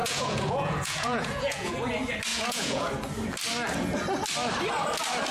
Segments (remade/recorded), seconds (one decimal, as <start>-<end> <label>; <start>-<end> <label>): 0.0-1.7 remade; 1.7-2.3 recorded; 2.3-2.9 remade; 2.9-5.3 recorded